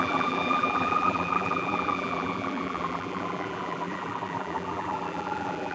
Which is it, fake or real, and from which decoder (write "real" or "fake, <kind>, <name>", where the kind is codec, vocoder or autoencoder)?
fake, vocoder, BigVGAN v2